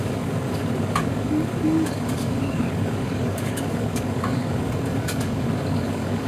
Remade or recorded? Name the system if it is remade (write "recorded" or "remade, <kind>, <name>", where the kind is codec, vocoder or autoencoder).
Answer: remade, codec, DAC